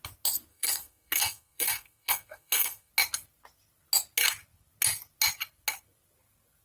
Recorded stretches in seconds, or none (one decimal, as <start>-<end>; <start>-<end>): 0.0-0.5; 2.9-6.6